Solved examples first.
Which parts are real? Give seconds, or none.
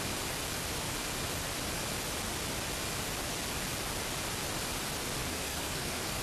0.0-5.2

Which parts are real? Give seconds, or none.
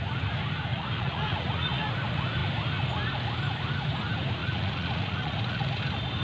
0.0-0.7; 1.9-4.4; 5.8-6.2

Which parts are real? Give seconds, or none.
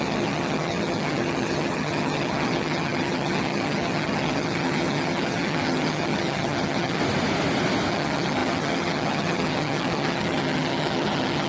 7.0-7.9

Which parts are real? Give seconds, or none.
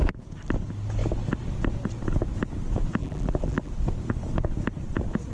0.0-3.0; 3.7-5.3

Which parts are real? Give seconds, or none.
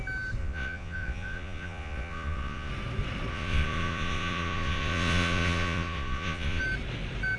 0.0-0.4; 2.7-3.3; 6.6-7.4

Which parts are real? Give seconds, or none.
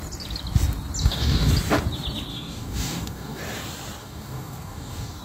0.0-1.0; 1.5-2.3; 3.4-4.0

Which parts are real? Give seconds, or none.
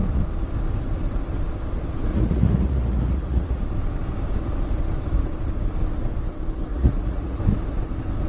0.0-2.1; 3.6-6.7; 7.4-8.3